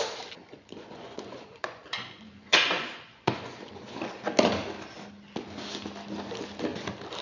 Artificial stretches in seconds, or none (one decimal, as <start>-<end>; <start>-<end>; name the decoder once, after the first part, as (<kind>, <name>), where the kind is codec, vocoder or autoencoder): 0.4-3.7 (vocoder, Vocos)